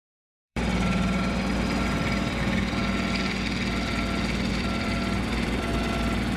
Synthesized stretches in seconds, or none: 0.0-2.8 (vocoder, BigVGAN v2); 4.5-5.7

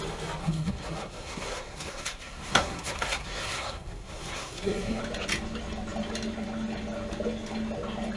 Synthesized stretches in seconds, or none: 0.4-5.0 (codec, SNAC)

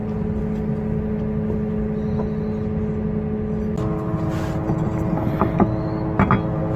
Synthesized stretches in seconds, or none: none

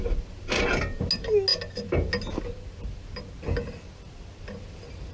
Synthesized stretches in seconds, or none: none

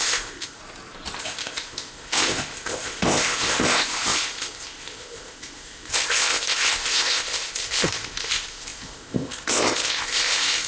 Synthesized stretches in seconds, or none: 0.0-0.6 (codec, ZipCodec); 1.2-10.7

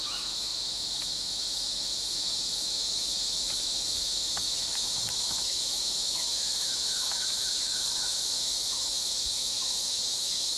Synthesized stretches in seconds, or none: 0.0-10.6 (autoencoder, DAC-VAE)